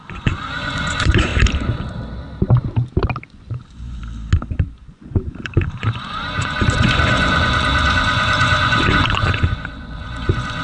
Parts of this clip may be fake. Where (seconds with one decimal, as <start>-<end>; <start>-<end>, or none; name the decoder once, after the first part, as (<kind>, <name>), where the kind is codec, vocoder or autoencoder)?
0.0-1.3 (vocoder, Vocos); 3.3-4.0; 4.9-10.6

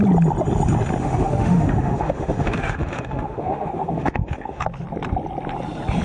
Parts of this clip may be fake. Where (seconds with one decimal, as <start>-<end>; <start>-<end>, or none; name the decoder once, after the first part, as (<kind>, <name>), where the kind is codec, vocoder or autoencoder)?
1.0-4.6 (autoencoder, DAC-VAE)